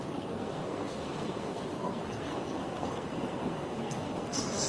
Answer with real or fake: fake